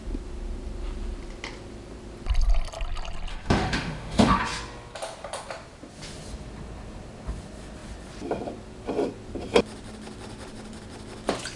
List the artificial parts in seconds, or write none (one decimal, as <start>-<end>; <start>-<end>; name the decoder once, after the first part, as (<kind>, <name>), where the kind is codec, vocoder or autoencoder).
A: 3.3-4.4 (autoencoder, DAC-VAE)